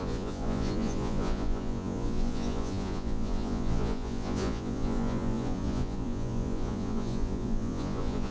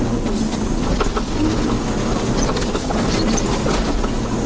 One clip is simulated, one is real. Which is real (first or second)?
second